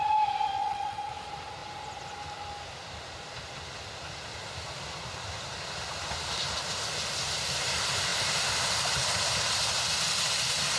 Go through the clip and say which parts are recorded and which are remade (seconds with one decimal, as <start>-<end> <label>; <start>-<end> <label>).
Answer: 0.0-0.6 recorded; 0.6-1.1 remade; 1.1-10.8 recorded